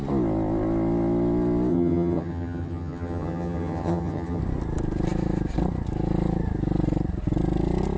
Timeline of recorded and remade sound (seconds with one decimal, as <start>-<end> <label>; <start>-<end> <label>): 0.0-1.7 recorded; 1.7-4.4 remade; 4.4-8.0 recorded